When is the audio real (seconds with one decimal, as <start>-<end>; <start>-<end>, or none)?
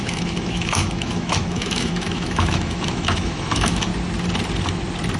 3.9-5.2